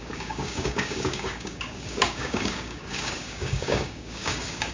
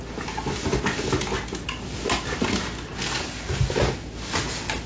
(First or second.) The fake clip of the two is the first